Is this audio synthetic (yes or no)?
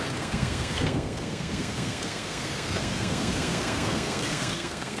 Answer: yes